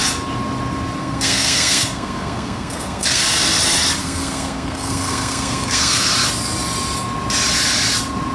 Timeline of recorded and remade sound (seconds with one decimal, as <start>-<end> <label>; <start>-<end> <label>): 0.0-1.0 recorded; 1.0-3.2 remade; 3.2-4.0 recorded; 4.0-6.1 remade; 6.1-8.3 recorded